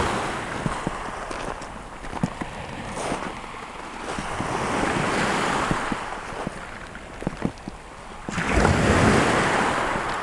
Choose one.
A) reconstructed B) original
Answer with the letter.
B